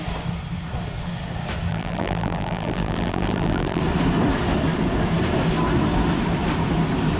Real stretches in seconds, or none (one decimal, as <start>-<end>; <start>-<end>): 0.0-1.7; 3.8-7.2